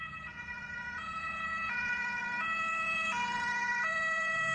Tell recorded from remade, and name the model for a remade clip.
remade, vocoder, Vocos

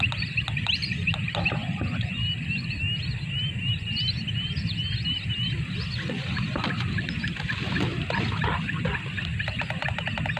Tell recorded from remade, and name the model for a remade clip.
recorded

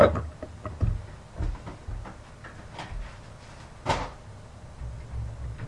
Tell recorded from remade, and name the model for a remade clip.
recorded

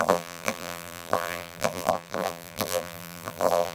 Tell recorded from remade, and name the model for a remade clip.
remade, vocoder, BigVGAN v2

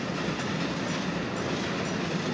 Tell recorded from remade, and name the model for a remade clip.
recorded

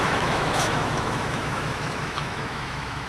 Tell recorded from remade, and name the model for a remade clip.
remade, autoencoder, DAC-VAE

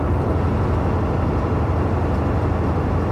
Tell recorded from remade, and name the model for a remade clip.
recorded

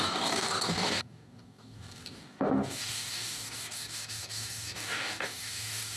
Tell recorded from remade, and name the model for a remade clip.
remade, codec, DAC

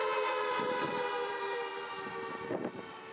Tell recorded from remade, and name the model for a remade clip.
remade, vocoder, BigVGAN v2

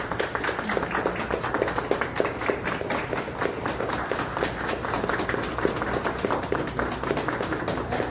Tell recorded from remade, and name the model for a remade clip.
recorded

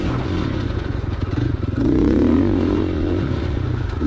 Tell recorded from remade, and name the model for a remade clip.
remade, vocoder, Vocos